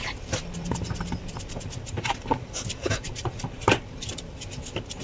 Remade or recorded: remade